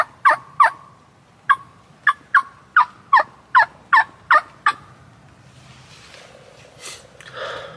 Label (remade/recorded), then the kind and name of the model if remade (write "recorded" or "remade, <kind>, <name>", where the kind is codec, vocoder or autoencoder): recorded